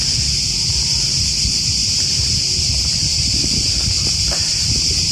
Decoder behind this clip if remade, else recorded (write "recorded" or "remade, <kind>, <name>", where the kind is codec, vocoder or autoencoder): remade, vocoder, BigVGAN v2